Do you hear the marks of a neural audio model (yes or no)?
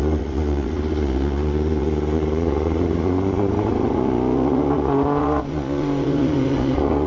yes